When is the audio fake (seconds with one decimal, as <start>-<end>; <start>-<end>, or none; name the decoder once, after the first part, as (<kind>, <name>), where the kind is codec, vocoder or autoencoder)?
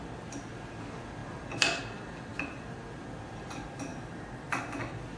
3.9-4.6 (vocoder, BigVGAN v2)